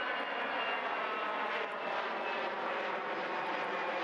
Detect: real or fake real